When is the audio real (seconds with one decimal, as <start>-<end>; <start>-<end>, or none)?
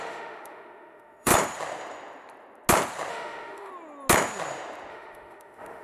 1.3-3.1; 3.7-4.9